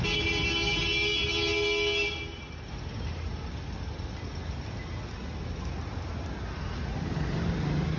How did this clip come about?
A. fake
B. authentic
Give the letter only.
B